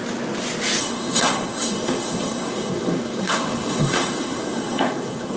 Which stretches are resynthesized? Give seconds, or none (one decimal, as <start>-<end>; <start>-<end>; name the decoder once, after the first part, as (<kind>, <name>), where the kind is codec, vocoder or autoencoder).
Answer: 0.8-5.4 (codec, SNAC)